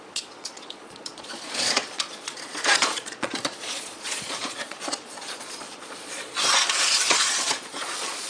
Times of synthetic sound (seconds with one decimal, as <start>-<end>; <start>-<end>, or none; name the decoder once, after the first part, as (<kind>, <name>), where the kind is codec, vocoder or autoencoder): 0.0-8.3 (vocoder, Vocos)